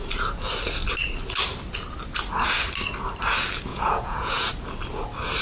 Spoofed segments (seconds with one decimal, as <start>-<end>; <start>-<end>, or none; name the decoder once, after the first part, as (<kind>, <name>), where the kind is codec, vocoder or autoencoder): 3.7-4.5 (vocoder, Vocos)